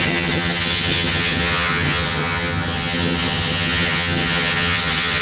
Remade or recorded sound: remade